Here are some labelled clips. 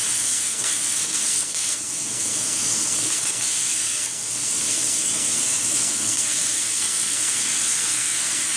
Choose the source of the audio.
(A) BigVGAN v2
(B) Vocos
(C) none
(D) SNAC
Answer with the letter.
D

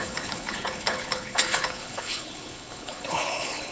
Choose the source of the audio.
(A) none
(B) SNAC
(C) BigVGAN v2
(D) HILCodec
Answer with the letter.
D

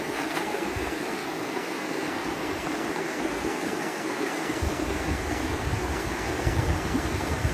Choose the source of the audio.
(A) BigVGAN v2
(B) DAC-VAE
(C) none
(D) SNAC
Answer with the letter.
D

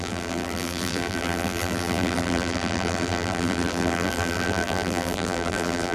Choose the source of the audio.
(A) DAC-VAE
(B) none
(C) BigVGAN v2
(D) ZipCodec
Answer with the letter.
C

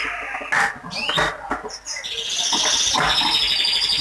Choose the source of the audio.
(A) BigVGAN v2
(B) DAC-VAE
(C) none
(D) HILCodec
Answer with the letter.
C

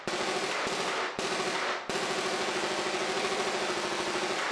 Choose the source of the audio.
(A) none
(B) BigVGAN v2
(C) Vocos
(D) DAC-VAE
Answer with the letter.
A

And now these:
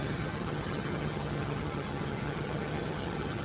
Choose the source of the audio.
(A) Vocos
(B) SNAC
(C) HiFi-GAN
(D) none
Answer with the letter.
C